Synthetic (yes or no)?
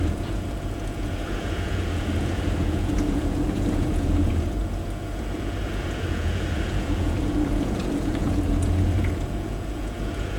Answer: yes